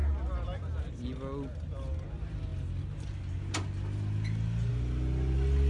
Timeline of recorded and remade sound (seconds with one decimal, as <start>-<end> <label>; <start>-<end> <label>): 0.0-5.7 recorded